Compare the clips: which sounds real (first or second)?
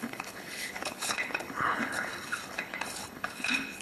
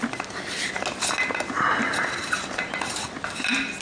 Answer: second